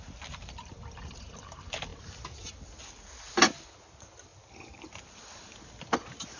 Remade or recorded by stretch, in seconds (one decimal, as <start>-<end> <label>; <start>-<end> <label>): 0.0-6.4 recorded